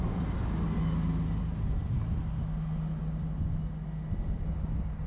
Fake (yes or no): no